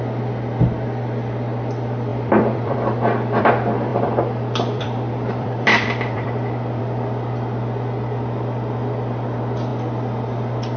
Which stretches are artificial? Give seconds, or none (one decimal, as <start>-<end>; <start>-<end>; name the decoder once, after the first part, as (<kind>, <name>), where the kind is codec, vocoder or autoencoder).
2.1-3.5 (vocoder, BigVGAN v2); 3.9-6.8